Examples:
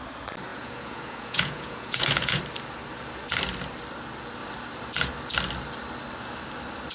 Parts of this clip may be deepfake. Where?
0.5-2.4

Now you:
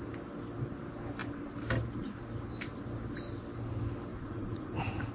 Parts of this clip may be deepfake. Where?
4.1-5.1

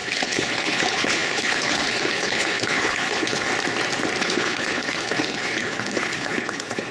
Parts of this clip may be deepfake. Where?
0.0-3.5; 4.2-6.9

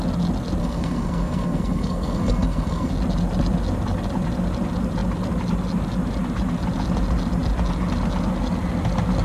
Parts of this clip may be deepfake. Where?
0.6-2.9

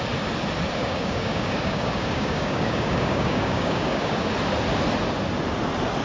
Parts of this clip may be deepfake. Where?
0.8-4.3

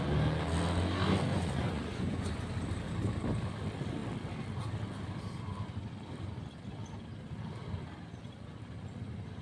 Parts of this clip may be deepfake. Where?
1.3-2.4

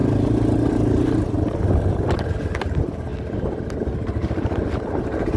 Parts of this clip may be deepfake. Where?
none

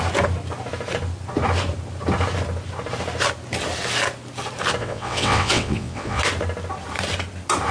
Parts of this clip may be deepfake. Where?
4.8-6.2